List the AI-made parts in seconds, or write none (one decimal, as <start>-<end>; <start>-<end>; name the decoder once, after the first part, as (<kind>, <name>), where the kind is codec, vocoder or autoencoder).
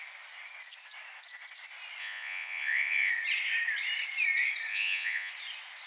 2.0-3.1 (vocoder, Vocos); 4.7-5.3